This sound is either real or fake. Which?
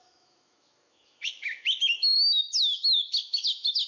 fake